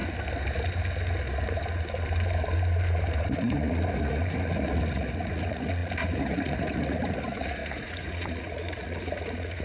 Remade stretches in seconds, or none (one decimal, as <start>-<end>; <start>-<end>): 3.2-9.6